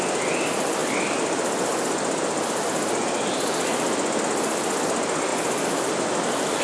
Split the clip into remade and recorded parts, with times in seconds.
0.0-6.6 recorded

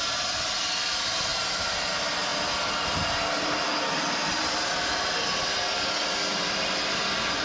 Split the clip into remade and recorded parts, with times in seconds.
0.0-7.4 recorded

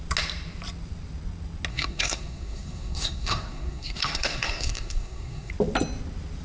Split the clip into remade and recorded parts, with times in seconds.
0.0-1.7 recorded; 1.7-5.5 remade; 5.5-6.4 recorded

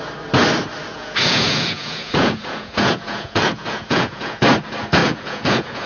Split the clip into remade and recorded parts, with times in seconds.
0.0-0.9 recorded; 0.9-4.4 remade; 4.4-5.0 recorded; 5.0-5.9 remade

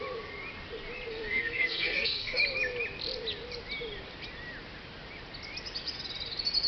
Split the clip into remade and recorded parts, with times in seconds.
0.0-1.1 recorded; 1.1-2.4 remade; 2.4-6.7 recorded